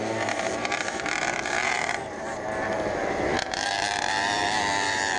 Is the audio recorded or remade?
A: remade